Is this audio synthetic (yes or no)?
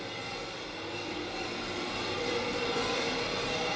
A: no